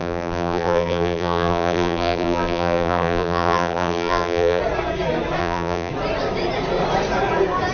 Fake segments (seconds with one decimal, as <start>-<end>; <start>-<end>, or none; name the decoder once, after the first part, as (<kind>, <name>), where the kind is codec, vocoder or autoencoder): 0.0-4.6 (vocoder, BigVGAN v2); 5.4-5.9